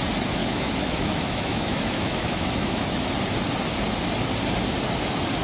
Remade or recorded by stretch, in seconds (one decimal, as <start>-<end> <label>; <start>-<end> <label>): 0.0-0.4 recorded; 0.4-3.1 remade; 3.1-5.4 recorded